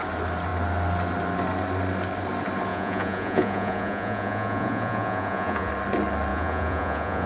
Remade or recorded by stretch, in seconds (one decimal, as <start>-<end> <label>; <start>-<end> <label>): 0.0-2.7 recorded; 2.7-5.7 remade; 5.7-6.3 recorded; 6.3-7.3 remade